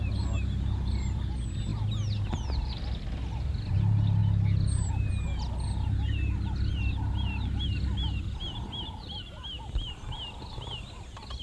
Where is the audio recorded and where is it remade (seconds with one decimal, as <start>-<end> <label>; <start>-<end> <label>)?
0.0-11.4 recorded